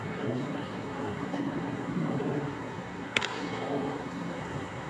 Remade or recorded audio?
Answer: remade